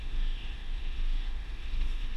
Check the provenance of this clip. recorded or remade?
remade